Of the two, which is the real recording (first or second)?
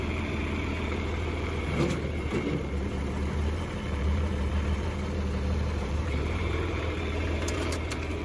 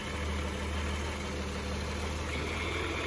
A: second